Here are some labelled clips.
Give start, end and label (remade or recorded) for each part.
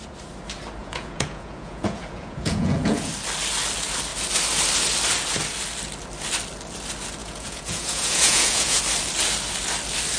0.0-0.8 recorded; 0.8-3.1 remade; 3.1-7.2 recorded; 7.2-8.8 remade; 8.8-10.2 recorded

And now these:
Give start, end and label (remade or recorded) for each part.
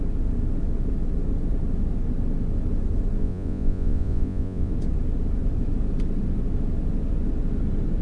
0.0-3.2 recorded; 3.2-4.7 remade; 4.7-8.0 recorded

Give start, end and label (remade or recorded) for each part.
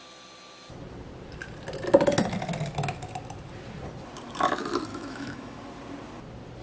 0.0-4.9 recorded; 4.9-5.6 remade; 5.6-6.6 recorded